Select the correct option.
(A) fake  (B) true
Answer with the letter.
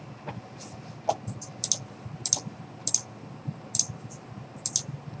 B